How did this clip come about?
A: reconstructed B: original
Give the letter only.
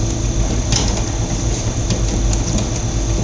B